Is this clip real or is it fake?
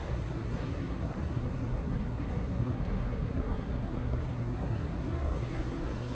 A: fake